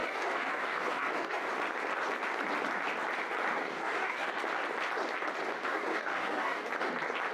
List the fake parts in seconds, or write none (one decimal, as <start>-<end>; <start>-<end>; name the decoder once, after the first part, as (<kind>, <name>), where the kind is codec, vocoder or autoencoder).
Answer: 0.0-1.5 (codec, DAC); 3.5-4.3; 5.6-6.7